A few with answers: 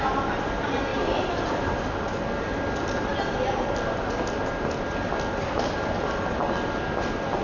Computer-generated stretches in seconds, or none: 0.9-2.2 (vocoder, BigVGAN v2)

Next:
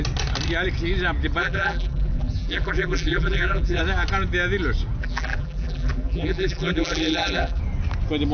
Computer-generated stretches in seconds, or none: 1.4-3.8 (vocoder, BigVGAN v2); 5.0-7.6

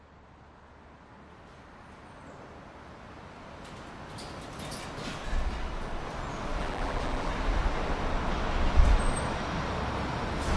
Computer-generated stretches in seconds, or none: 6.6-7.3 (vocoder, BigVGAN v2)

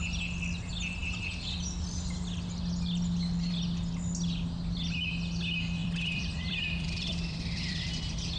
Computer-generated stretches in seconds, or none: 5.8-8.4 (vocoder, BigVGAN v2)

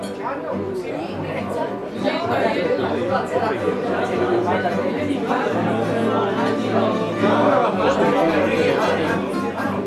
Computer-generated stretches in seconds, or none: 1.8-5.3 (vocoder, BigVGAN v2)

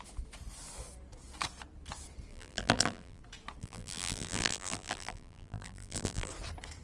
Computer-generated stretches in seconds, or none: 2.3-3.2 (vocoder, BigVGAN v2); 3.6-6.3